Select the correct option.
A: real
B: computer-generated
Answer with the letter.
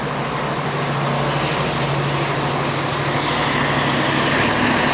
A